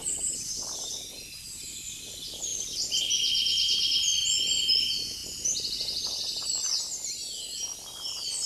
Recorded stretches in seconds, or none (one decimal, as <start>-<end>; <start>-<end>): 0.0-8.5